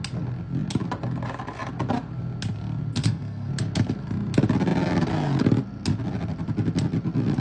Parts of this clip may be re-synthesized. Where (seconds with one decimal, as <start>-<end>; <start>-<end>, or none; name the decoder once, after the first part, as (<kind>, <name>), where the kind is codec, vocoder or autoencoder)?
3.0-3.5 (codec, SNAC)